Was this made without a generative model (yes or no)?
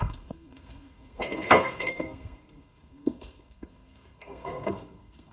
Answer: no